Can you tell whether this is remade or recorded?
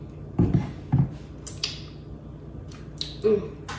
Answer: recorded